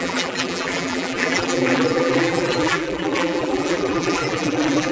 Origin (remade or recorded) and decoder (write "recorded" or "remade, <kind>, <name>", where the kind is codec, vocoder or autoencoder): remade, vocoder, BigVGAN v2